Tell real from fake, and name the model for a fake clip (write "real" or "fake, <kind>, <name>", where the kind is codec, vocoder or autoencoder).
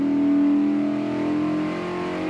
real